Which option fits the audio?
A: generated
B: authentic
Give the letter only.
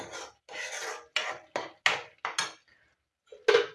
B